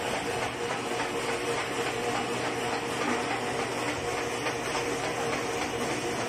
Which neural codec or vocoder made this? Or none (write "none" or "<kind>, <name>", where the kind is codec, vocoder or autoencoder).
none